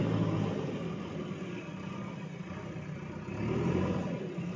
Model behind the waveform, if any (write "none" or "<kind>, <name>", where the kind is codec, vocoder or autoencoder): none